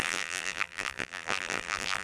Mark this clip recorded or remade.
remade